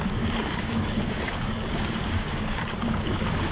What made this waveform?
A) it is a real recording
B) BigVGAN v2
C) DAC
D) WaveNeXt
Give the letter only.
C